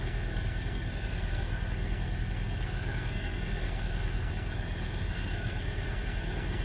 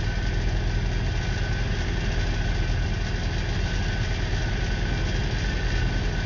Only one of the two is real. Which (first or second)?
second